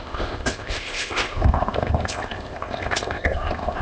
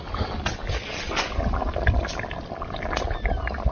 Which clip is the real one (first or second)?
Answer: second